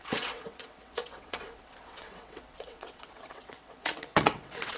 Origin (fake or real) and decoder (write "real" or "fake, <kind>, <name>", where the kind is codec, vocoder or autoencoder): fake, vocoder, WaveNeXt